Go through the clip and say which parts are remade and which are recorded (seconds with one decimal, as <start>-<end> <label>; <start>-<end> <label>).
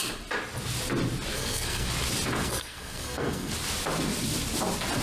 0.0-1.3 recorded; 1.3-1.9 remade; 1.9-2.4 recorded; 2.4-3.5 remade; 3.5-5.0 recorded